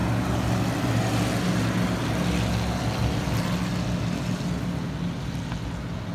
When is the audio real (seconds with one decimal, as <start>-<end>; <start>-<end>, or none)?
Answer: 0.0-6.1